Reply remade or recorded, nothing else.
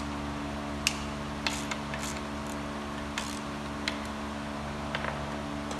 recorded